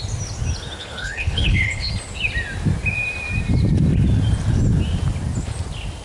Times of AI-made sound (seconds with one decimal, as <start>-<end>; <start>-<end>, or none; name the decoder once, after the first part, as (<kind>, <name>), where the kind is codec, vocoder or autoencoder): 0.8-1.9 (codec, HILCodec)